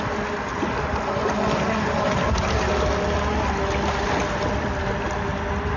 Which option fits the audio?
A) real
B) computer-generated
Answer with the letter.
A